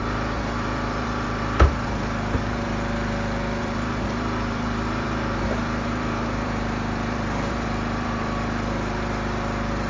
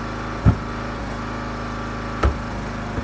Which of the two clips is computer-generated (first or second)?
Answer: first